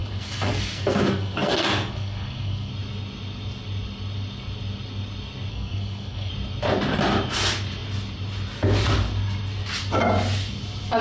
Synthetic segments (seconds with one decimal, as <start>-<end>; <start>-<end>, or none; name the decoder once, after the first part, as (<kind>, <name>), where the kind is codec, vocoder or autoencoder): 0.0-2.7 (codec, SNAC); 5.5-6.3